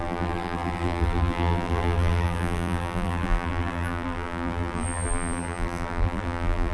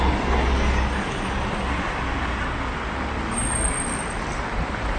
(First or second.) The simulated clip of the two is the first